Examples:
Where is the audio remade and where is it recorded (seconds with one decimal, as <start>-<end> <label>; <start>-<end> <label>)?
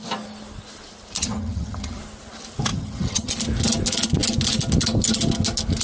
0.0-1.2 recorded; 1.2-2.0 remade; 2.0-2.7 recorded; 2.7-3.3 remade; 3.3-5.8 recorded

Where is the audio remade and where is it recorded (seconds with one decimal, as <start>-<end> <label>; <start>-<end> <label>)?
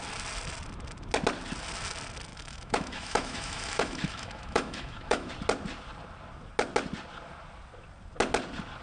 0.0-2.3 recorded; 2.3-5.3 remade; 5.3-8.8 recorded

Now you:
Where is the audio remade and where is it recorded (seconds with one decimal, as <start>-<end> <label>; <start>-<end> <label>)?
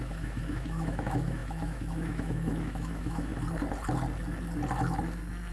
0.0-3.3 remade; 3.3-5.5 recorded